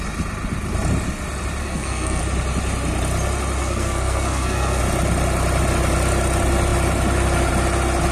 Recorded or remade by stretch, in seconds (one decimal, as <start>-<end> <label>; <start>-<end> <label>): 0.0-1.6 recorded; 1.6-2.2 remade; 2.2-3.6 recorded; 3.6-4.8 remade; 4.8-8.1 recorded